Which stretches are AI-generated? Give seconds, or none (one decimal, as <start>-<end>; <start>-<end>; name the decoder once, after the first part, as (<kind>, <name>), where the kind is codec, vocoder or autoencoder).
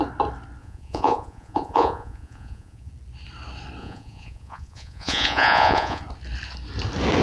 0.6-2.9 (vocoder, Vocos); 3.8-6.0